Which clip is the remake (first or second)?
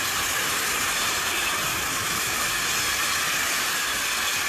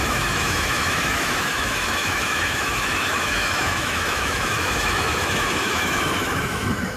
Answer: second